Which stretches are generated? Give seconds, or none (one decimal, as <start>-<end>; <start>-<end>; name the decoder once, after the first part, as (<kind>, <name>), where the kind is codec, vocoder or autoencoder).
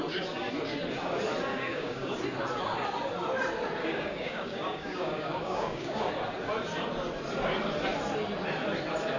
1.5-2.2 (codec, DAC); 3.8-6.1